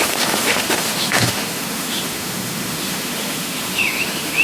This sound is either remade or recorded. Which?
remade